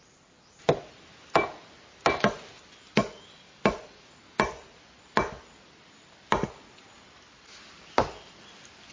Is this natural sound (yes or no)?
yes